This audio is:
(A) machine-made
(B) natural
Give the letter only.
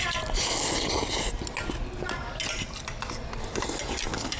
B